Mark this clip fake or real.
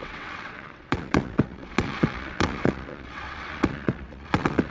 fake